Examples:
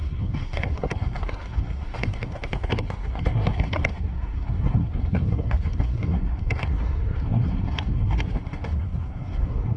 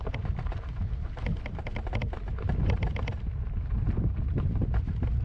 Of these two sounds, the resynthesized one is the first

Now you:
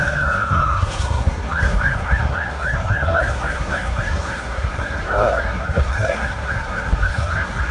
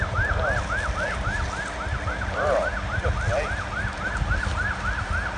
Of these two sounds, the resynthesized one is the first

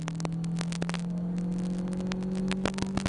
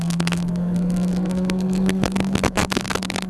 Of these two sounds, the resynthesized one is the second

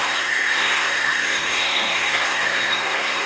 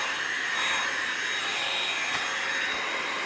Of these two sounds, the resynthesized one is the first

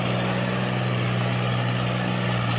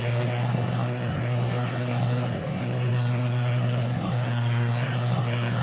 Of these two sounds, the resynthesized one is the second